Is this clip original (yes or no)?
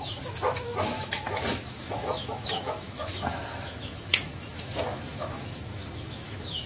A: no